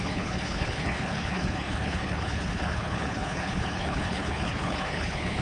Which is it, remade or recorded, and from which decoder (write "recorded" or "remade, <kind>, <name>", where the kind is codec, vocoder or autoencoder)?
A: remade, codec, HILCodec